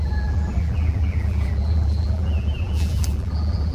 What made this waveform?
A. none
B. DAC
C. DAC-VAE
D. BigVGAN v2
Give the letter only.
D